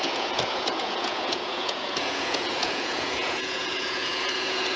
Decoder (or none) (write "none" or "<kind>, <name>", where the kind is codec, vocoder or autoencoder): vocoder, Vocos